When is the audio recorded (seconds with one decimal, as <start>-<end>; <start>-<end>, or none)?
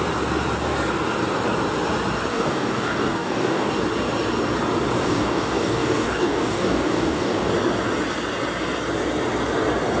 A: 0.0-2.3; 3.7-5.0; 7.5-10.0